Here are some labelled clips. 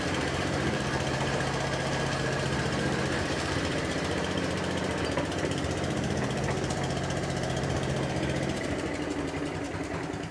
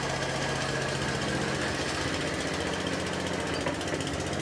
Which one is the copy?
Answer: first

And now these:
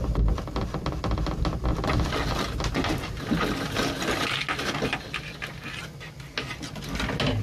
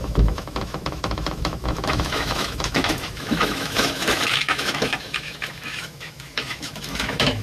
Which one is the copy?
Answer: second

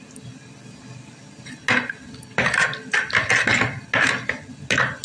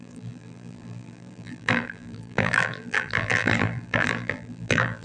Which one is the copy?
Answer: second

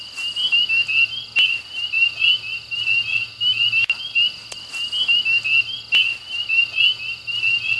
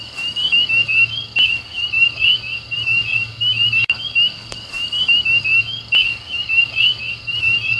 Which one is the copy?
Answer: second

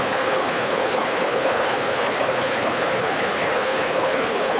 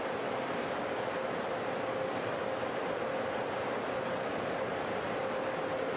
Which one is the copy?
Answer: first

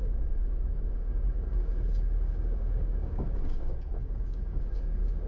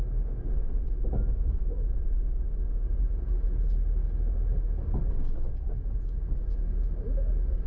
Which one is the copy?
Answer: first